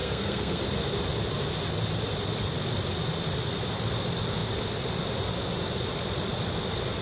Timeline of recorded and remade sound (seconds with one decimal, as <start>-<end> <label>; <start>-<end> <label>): 0.0-0.6 remade; 0.6-7.0 recorded